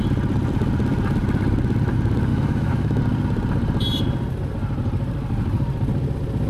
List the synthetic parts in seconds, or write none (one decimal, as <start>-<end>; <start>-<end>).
2.3-3.0